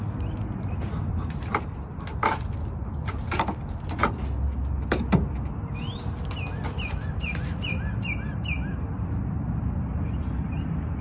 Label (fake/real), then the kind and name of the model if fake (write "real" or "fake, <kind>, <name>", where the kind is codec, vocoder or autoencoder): real